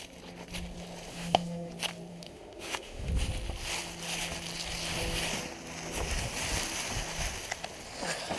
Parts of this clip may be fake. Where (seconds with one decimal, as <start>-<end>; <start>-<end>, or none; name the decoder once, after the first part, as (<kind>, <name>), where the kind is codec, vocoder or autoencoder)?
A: 1.1-1.7 (autoencoder, DAC-VAE); 2.1-3.1